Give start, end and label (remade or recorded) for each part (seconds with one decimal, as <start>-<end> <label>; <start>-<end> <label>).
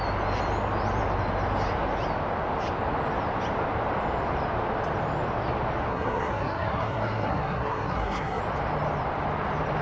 0.0-5.9 recorded; 5.9-8.4 remade; 8.4-9.8 recorded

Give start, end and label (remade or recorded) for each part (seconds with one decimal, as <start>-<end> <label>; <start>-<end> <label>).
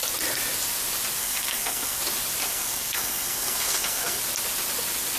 0.0-1.2 recorded; 1.2-2.0 remade; 2.0-2.4 recorded; 2.4-4.2 remade; 4.2-5.2 recorded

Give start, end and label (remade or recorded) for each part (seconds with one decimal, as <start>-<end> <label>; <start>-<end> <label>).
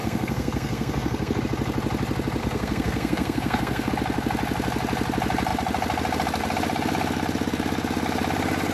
0.0-1.4 remade; 1.4-2.4 recorded; 2.4-3.9 remade; 3.9-8.7 recorded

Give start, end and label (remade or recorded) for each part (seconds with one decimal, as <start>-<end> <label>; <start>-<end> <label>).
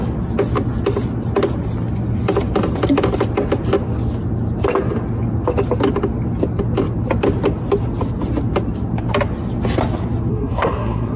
0.0-10.3 recorded; 10.3-11.2 remade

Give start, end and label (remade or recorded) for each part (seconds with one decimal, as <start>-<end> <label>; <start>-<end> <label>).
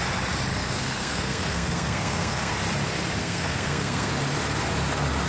0.0-0.5 recorded; 0.5-2.5 remade; 2.5-3.2 recorded; 3.2-4.1 remade; 4.1-5.3 recorded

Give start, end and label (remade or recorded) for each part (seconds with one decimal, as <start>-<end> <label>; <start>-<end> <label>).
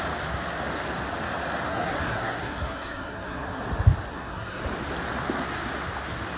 0.0-1.7 recorded; 1.7-3.6 remade; 3.6-4.1 recorded; 4.1-4.6 remade; 4.6-6.4 recorded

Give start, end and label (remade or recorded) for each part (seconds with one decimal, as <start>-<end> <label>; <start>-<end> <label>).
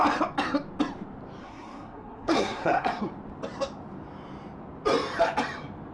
0.0-1.4 recorded; 1.4-3.0 remade; 3.0-5.9 recorded